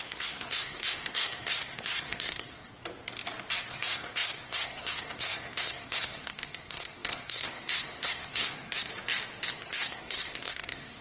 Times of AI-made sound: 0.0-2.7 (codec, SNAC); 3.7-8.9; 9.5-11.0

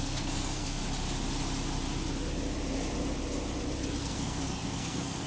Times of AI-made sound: 0.0-0.8 (codec, SNAC); 4.0-5.3

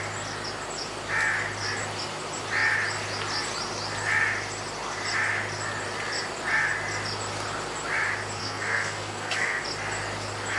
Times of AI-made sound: 8.4-9.6 (codec, SNAC)

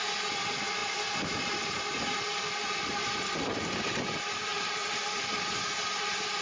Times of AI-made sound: none